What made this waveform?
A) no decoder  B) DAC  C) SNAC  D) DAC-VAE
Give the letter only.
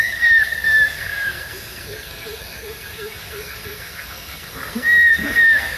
C